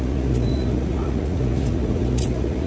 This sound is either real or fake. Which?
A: fake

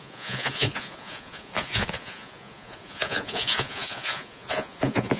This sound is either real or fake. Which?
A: fake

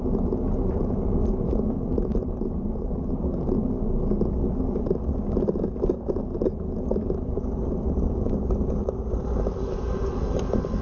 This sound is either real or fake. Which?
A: real